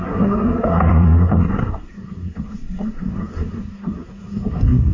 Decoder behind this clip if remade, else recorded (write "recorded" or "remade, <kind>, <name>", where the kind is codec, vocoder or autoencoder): remade, codec, SNAC